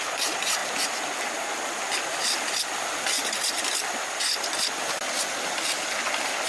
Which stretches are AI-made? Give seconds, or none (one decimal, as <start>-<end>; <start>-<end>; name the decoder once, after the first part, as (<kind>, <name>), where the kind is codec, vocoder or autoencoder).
none